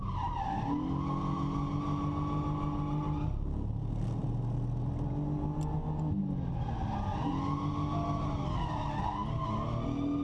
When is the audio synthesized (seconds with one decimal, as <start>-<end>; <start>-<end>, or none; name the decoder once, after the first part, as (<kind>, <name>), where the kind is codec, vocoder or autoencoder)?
none